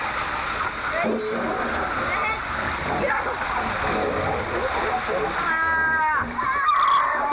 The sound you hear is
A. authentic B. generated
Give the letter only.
A